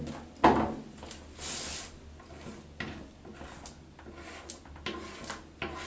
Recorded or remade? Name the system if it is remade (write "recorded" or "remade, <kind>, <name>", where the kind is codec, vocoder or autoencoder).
recorded